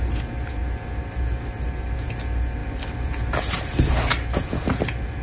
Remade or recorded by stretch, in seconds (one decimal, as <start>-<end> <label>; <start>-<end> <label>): 0.0-5.2 recorded

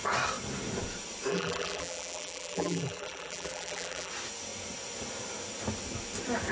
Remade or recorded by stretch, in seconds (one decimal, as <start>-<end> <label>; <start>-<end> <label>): 0.0-1.3 recorded; 1.3-4.1 remade; 4.1-6.5 recorded

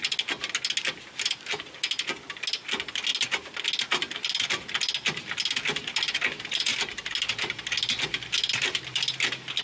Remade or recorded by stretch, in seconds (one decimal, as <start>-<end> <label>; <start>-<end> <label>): 0.0-9.6 recorded